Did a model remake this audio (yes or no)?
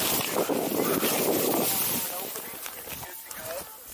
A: no